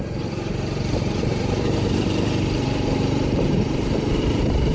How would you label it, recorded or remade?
remade